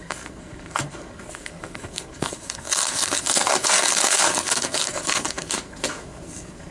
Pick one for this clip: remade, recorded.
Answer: remade